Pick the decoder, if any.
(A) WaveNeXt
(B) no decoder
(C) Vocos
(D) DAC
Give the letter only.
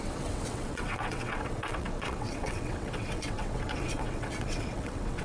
A